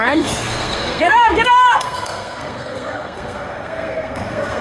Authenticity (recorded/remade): remade